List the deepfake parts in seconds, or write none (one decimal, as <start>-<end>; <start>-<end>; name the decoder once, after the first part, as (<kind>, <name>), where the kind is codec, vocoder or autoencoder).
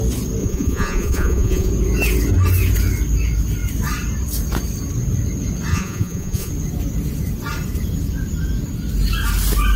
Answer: 0.4-1.7 (vocoder, Vocos); 5.7-6.5